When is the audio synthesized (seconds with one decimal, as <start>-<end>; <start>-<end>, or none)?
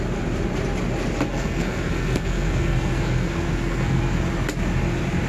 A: 1.3-4.2